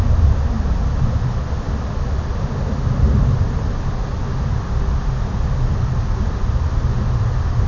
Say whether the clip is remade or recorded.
recorded